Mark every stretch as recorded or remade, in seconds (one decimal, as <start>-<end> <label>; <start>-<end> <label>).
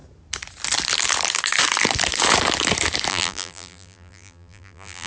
0.0-3.1 recorded; 3.1-5.1 remade